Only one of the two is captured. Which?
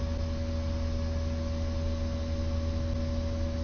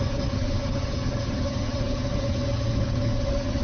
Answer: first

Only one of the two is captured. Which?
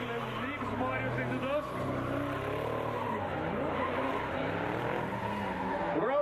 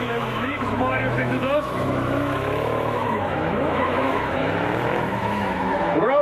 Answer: first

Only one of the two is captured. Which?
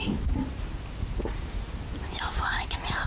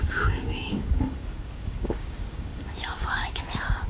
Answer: first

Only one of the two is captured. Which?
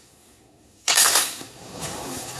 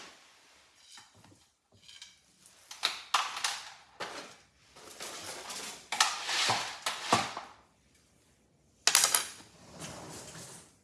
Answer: second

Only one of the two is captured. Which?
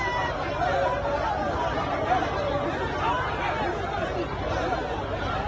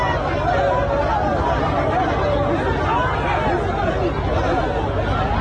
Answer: second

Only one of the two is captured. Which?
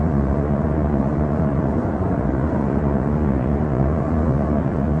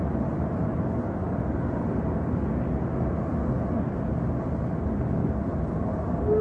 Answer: second